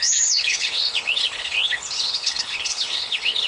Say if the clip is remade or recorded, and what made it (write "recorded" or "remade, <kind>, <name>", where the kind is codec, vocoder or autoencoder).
remade, codec, HILCodec